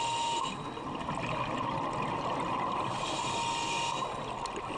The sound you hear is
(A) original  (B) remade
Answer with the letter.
A